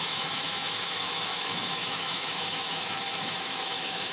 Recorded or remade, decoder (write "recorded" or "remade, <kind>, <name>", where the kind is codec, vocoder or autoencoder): remade, autoencoder, DAC-VAE